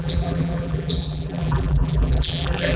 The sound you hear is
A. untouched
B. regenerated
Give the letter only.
B